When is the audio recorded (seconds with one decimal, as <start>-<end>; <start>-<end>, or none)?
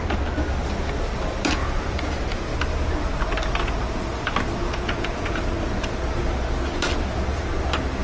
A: 0.0-1.6; 2.1-4.6; 5.4-8.0